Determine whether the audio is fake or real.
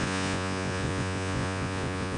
fake